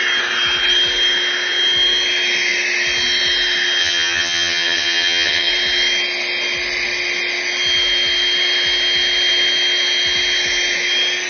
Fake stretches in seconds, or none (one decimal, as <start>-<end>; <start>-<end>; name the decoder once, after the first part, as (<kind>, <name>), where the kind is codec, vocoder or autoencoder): 3.8-5.5 (vocoder, HiFi-GAN)